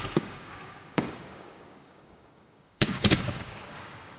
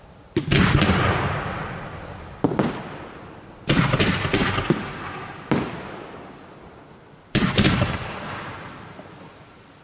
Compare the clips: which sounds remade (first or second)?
first